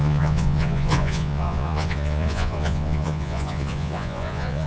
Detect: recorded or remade remade